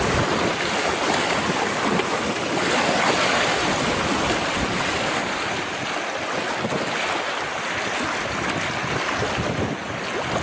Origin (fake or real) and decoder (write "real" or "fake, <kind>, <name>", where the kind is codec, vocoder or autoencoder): real